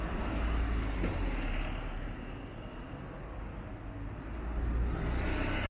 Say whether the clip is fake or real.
real